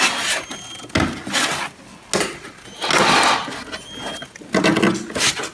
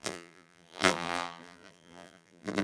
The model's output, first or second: second